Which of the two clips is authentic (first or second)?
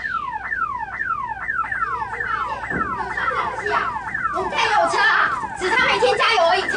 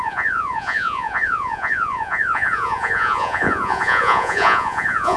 first